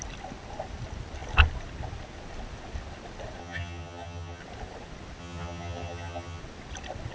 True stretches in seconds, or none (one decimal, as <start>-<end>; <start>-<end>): 0.0-3.4; 4.4-5.2; 6.4-7.1